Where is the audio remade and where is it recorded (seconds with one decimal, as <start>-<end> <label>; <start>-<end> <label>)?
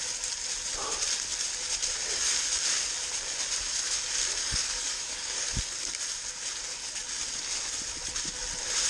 0.0-4.4 recorded; 4.4-5.5 remade; 5.5-8.9 recorded